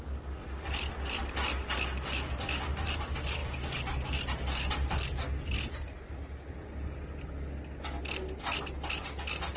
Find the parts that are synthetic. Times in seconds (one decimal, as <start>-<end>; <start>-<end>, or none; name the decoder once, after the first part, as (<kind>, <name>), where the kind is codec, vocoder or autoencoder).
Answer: none